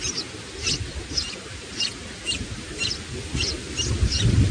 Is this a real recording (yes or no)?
yes